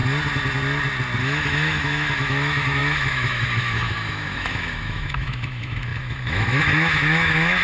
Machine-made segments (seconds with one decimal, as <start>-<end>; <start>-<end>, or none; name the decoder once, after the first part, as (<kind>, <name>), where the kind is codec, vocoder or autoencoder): 1.2-7.6 (autoencoder, DAC-VAE)